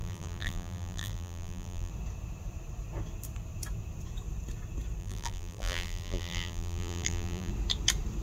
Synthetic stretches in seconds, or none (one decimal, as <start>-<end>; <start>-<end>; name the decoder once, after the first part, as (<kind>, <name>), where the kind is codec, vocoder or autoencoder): 0.0-1.9 (vocoder, BigVGAN v2); 5.0-7.5